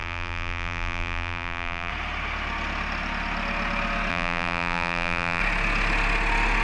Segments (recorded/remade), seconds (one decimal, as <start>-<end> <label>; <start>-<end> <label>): 0.0-1.9 remade; 1.9-4.1 recorded; 4.1-5.4 remade; 5.4-6.6 recorded